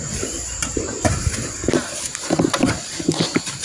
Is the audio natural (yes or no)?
no